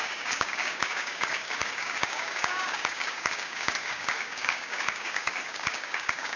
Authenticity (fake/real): fake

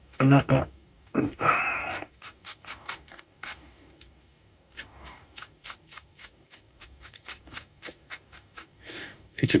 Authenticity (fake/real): fake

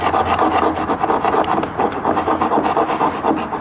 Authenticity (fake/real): real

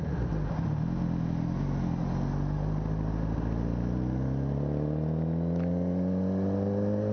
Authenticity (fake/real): real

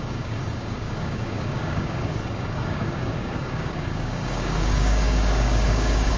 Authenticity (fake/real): fake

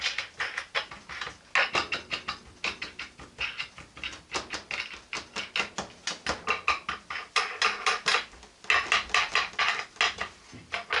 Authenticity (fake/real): real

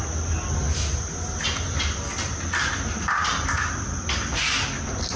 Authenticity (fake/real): real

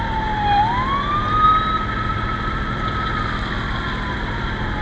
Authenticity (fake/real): real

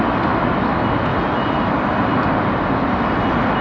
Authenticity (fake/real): real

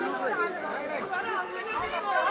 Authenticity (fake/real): fake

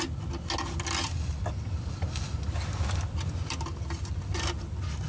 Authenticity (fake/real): real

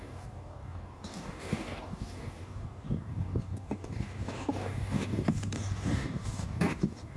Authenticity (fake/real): fake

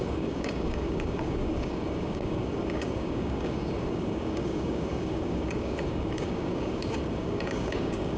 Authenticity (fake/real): fake